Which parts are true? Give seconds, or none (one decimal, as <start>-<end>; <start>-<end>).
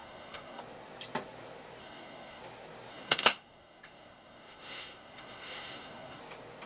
0.6-1.8; 2.4-2.9; 6.2-6.7